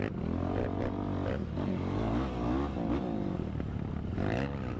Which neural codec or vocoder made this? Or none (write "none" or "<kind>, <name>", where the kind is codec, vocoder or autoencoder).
none